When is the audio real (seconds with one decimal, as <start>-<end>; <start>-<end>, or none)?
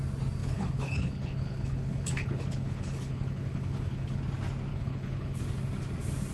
0.0-0.4; 4.2-4.7; 5.4-6.3